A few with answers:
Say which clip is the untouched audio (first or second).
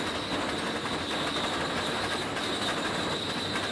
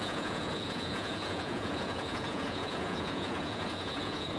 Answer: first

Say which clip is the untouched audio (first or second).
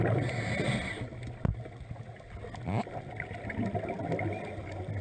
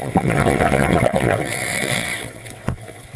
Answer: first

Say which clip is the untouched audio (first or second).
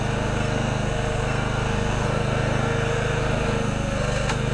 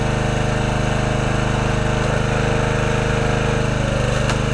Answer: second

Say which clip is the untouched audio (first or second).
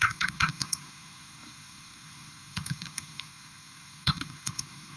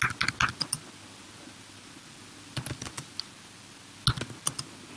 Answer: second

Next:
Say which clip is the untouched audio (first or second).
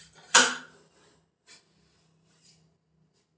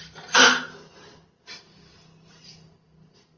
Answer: first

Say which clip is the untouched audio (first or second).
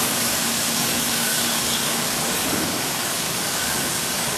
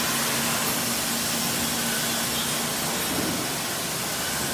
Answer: second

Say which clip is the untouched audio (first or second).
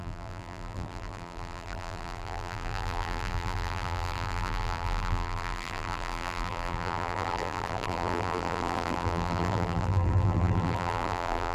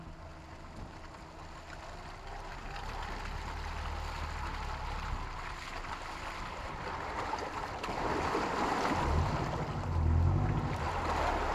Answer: second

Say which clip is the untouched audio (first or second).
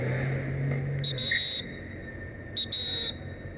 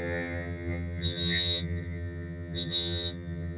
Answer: first